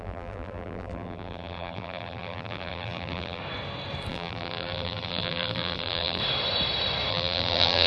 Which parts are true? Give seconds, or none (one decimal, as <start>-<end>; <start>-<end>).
3.4-4.1; 6.2-7.1